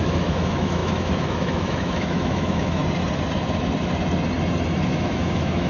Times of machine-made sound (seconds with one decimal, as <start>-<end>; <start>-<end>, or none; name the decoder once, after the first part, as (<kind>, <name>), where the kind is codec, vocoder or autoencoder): 0.0-2.8 (autoencoder, DAC-VAE); 4.8-5.7